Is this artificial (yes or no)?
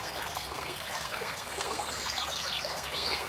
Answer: yes